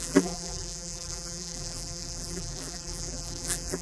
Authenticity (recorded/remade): remade